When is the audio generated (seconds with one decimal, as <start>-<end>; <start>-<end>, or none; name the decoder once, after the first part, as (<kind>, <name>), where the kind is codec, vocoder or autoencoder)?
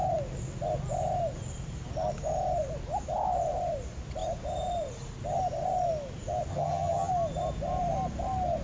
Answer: 6.5-7.1 (vocoder, HiFi-GAN)